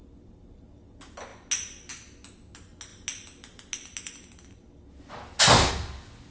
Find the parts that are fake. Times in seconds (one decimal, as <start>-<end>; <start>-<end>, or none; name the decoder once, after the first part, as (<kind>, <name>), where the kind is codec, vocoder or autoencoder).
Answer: none